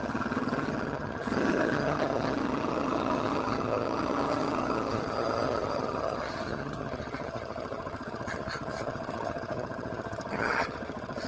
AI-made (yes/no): yes